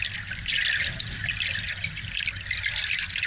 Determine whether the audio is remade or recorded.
recorded